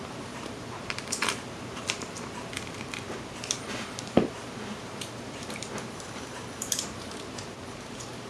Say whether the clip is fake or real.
fake